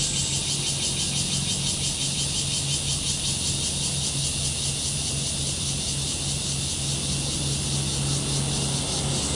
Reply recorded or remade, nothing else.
recorded